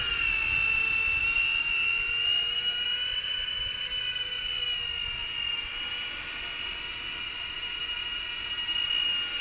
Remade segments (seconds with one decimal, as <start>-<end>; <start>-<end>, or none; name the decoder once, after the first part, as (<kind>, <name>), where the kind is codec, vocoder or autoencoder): 1.2-4.6 (vocoder, BigVGAN v2); 5.2-6.1